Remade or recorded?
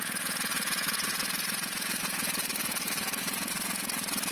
remade